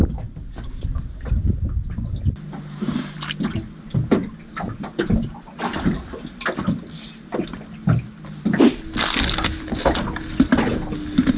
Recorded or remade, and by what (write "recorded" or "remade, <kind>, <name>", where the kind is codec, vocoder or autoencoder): recorded